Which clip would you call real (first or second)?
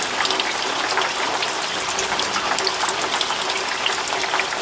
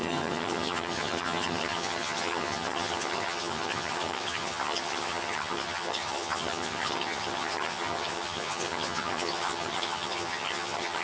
first